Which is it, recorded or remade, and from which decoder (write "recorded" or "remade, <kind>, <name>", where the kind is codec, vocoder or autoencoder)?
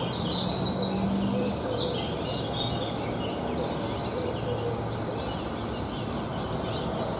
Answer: recorded